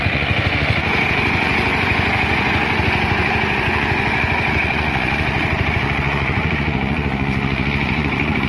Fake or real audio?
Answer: fake